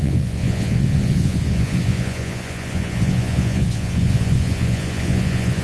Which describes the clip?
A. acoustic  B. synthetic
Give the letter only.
B